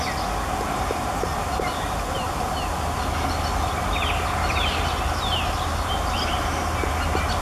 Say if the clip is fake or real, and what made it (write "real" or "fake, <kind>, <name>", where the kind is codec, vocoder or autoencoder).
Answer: real